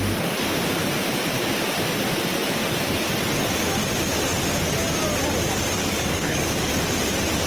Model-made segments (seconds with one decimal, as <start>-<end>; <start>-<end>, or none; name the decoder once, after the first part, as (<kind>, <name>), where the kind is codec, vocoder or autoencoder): 5.8-6.7 (codec, DAC)